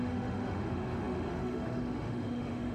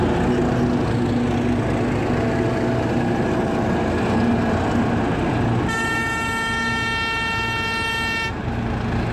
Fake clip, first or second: first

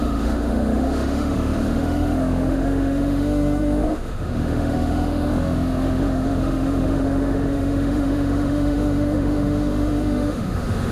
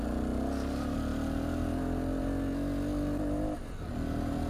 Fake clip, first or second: first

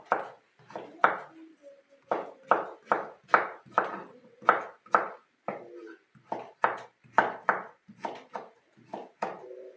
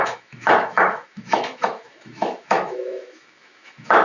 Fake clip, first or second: second